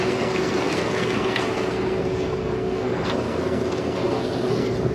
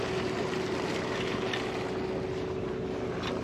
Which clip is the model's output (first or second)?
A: first